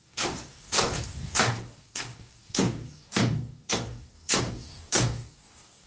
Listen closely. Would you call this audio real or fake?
fake